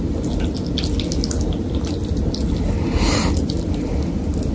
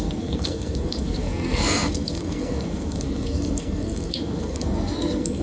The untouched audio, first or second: first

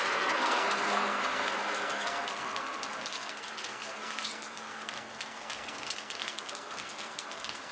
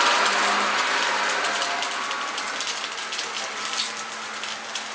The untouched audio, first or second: second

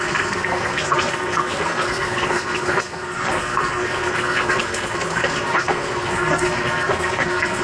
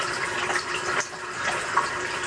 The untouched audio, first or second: second